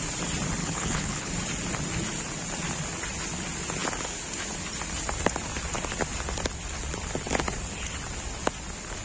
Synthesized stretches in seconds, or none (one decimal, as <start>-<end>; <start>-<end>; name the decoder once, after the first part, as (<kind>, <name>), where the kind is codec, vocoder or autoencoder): 0.6-1.3 (codec, HILCodec)